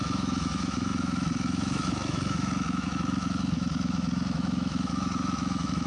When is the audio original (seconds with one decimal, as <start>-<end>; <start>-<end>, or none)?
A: none